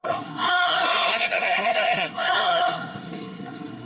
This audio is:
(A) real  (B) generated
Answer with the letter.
B